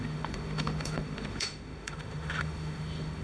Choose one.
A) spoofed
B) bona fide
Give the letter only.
A